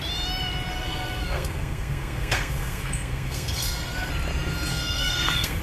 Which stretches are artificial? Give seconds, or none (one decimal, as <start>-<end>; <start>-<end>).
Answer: 0.7-4.1; 4.7-5.6